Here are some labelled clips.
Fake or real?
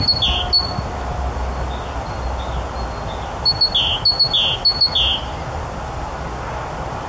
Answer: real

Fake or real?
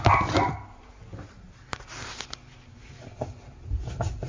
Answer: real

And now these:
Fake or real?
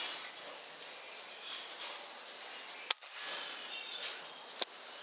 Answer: real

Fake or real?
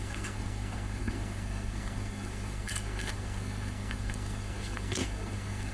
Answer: fake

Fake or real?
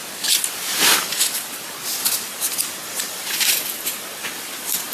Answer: real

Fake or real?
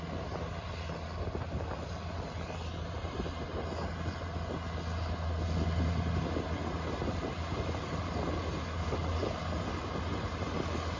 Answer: real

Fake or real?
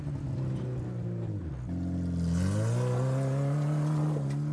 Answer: real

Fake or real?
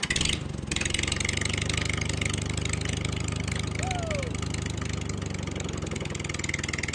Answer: real